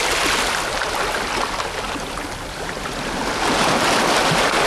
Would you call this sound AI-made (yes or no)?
no